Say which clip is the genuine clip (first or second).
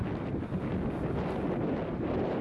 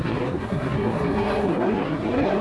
first